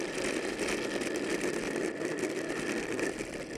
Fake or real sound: fake